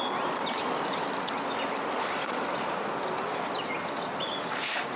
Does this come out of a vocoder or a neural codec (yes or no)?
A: no